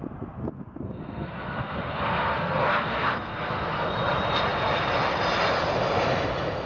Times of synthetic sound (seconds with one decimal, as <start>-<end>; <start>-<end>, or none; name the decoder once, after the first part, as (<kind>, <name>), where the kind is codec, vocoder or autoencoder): 0.4-3.9 (codec, SNAC)